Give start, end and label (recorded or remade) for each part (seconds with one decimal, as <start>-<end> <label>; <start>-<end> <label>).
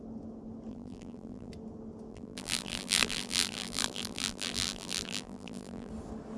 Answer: 0.0-0.7 recorded; 0.7-1.5 remade; 1.5-2.1 recorded; 2.1-5.9 remade; 5.9-6.4 recorded